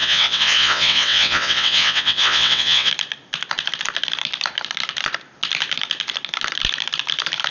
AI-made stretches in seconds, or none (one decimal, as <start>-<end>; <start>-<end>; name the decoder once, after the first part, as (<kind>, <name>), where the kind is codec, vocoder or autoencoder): 0.0-2.9 (vocoder, WaveNeXt)